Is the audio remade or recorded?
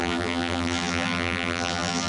remade